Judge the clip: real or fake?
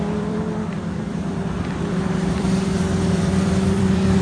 fake